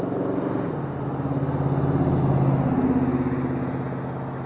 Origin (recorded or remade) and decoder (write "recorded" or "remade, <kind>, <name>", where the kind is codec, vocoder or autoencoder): recorded